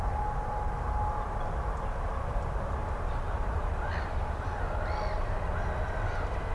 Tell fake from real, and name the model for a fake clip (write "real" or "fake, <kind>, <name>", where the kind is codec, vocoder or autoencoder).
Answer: real